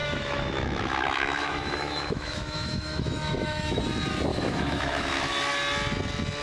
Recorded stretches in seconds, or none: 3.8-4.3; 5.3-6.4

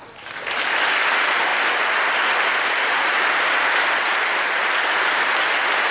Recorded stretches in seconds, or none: 0.0-5.9